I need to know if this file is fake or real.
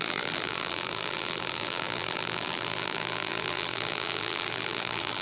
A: fake